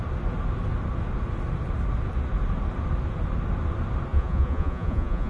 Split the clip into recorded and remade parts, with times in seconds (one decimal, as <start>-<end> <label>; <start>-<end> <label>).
0.0-4.1 recorded; 4.1-5.3 remade